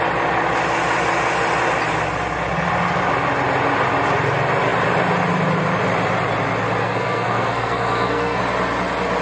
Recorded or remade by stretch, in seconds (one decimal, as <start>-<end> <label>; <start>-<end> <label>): 0.0-6.8 recorded; 6.8-8.4 remade; 8.4-9.2 recorded

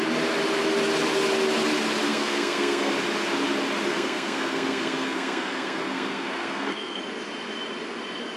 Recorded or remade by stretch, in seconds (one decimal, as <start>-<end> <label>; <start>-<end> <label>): 0.0-2.1 recorded; 2.1-2.9 remade; 2.9-3.9 recorded; 3.9-7.0 remade; 7.0-8.4 recorded

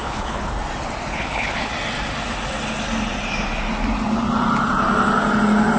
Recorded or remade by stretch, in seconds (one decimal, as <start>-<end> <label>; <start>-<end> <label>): 0.0-0.5 remade; 0.5-1.1 recorded; 1.1-1.7 remade; 1.7-5.8 recorded

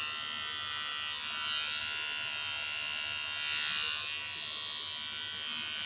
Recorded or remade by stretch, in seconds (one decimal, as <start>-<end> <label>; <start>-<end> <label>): 0.0-5.9 recorded

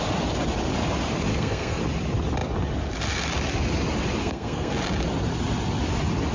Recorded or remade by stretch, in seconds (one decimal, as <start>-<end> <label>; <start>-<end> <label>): 0.0-1.3 recorded; 1.3-1.8 remade; 1.8-4.2 recorded; 4.2-4.7 remade; 4.7-6.3 recorded

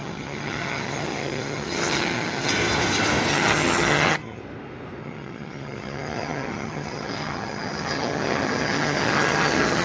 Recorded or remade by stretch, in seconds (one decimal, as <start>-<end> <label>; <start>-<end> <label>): 0.0-2.5 remade; 2.5-3.3 recorded; 3.3-4.4 remade; 4.4-5.0 recorded; 5.0-9.8 remade

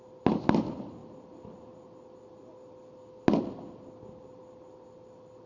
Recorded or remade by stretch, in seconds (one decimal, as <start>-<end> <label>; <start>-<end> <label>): 0.0-5.5 recorded